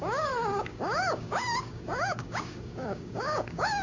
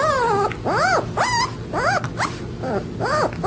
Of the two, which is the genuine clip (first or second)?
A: second